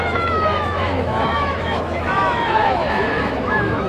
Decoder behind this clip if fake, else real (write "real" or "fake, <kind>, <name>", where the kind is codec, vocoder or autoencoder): fake, autoencoder, DAC-VAE